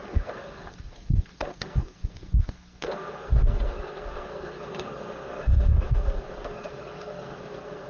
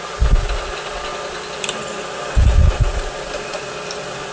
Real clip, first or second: second